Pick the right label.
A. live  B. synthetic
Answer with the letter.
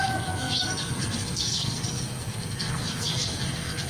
B